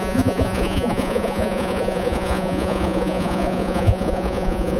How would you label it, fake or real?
fake